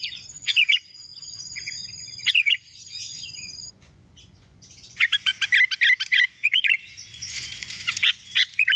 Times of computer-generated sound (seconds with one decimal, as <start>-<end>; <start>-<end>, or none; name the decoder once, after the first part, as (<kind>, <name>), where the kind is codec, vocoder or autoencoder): 0.0-5.3 (vocoder, Vocos); 6.1-8.8